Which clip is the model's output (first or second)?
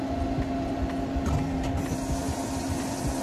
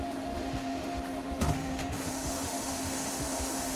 second